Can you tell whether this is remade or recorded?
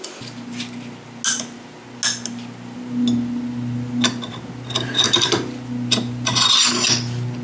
recorded